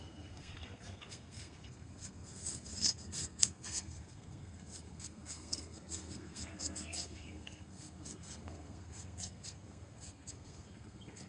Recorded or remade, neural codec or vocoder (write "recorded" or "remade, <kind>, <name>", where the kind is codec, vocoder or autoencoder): remade, codec, SNAC